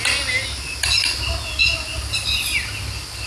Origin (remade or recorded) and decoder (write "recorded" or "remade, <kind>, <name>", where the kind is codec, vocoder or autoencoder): recorded